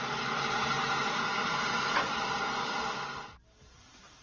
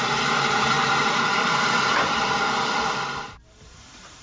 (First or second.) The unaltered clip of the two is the first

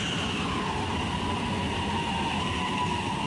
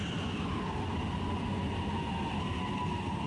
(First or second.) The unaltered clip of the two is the second